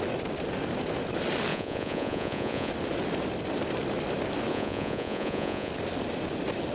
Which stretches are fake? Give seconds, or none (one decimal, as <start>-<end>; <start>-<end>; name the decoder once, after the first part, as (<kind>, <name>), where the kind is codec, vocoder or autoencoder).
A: 1.5-2.7 (vocoder, Vocos); 4.5-5.7

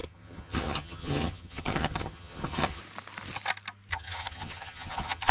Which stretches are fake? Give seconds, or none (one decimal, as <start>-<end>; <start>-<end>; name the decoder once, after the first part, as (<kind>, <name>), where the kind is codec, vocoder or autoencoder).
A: 0.0-2.8 (vocoder, HiFi-GAN); 3.9-5.3